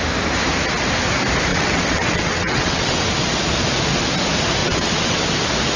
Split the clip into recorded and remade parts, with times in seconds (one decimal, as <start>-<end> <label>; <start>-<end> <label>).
0.0-1.5 recorded; 1.5-3.1 remade; 3.1-4.6 recorded; 4.6-5.2 remade; 5.2-5.8 recorded